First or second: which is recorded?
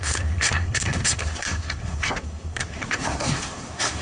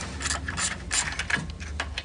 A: second